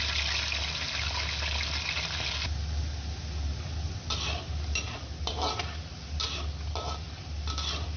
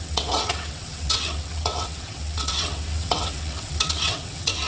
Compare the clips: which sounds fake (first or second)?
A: second